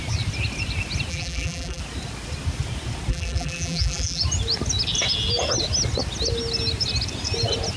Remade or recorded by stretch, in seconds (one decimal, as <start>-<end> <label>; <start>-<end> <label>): 0.0-1.1 recorded; 1.1-1.8 remade; 1.8-3.1 recorded; 3.1-4.2 remade; 4.2-7.8 recorded

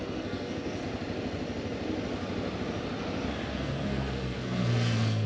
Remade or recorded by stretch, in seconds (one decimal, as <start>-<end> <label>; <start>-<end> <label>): 0.0-0.8 remade; 0.8-3.5 recorded; 3.5-5.3 remade

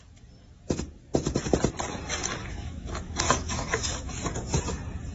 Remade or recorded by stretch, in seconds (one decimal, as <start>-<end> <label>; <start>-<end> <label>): 0.0-2.4 recorded; 2.4-4.1 remade; 4.1-5.1 recorded

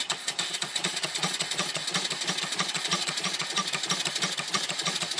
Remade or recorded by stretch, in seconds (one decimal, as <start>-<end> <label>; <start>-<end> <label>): 0.0-1.8 remade; 1.8-2.4 recorded; 2.4-3.6 remade; 3.6-4.5 recorded; 4.5-5.2 remade

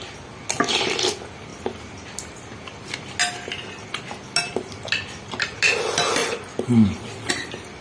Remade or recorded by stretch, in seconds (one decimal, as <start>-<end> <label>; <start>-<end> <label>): 0.0-6.2 recorded; 6.2-7.3 remade; 7.3-7.8 recorded

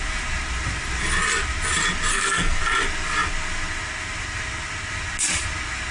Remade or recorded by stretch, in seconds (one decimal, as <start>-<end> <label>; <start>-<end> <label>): 0.0-2.1 recorded; 2.1-2.6 remade; 2.6-5.9 recorded

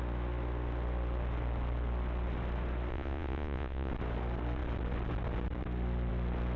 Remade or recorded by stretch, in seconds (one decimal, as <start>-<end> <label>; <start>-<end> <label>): 0.0-2.9 recorded; 2.9-3.9 remade; 3.9-6.6 recorded

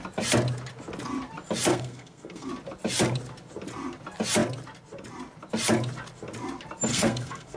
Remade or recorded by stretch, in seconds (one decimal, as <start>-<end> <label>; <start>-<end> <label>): 0.0-1.7 recorded; 1.7-2.5 remade; 2.5-6.9 recorded; 6.9-7.6 remade